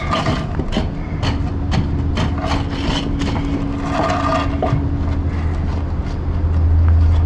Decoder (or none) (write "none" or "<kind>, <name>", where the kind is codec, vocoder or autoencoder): none